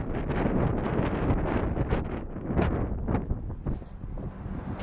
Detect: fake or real real